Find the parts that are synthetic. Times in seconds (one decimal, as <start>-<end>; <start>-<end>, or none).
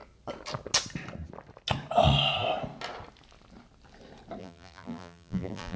4.4-5.8